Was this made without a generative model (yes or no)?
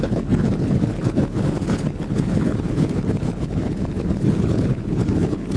no